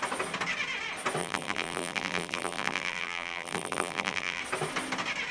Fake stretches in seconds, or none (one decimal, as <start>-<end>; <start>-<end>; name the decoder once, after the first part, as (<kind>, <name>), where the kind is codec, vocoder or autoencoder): 1.2-4.4 (vocoder, BigVGAN v2)